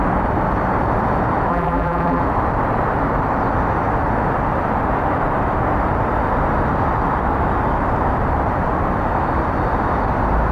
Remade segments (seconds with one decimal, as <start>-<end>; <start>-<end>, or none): 1.5-2.2